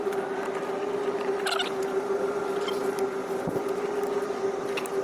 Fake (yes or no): no